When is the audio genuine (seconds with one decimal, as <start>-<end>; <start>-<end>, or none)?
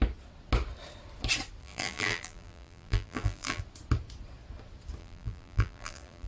0.0-1.6; 3.6-5.0